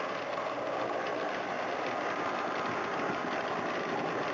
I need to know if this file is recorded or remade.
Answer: recorded